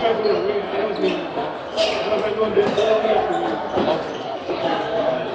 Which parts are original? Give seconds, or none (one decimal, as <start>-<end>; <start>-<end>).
0.0-2.5; 3.3-4.3

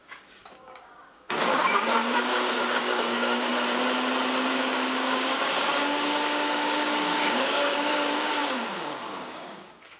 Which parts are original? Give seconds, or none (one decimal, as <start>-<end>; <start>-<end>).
3.5-4.5

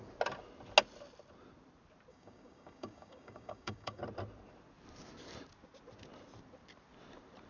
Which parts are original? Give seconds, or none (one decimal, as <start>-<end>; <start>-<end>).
0.0-2.1; 4.0-7.5

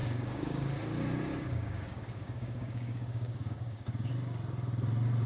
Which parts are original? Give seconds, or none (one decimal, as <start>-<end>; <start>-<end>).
0.8-1.3; 4.1-5.3

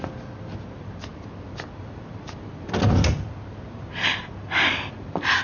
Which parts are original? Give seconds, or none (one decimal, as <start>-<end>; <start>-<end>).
0.0-5.4

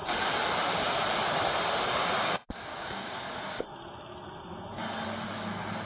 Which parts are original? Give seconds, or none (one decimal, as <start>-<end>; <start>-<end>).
0.0-2.7; 3.4-5.9

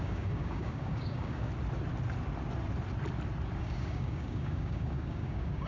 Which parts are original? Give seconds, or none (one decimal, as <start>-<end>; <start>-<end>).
1.5-3.6